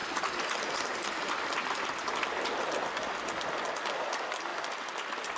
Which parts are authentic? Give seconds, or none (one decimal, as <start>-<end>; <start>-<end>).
0.0-5.4